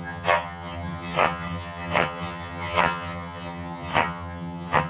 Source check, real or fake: fake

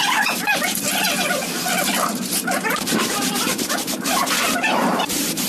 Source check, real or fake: fake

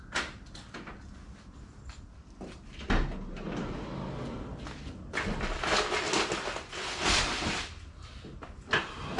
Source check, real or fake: real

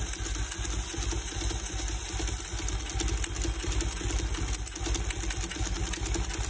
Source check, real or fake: real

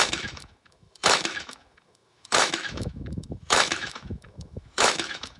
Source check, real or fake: fake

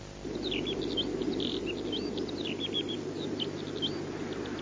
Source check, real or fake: real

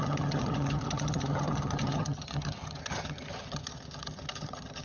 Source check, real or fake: fake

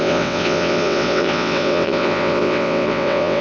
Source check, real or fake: fake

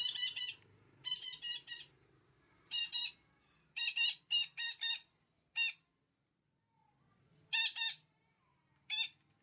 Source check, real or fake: real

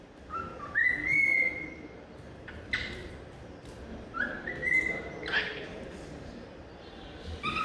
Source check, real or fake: fake